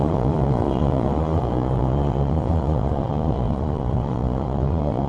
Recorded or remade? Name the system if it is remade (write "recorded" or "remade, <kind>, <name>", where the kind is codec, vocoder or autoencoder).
remade, vocoder, Vocos